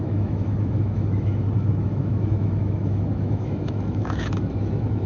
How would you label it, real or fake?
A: fake